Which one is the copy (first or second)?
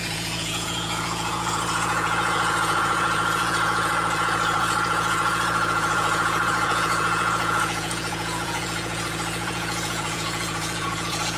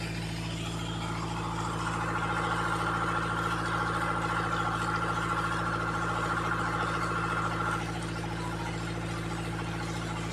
first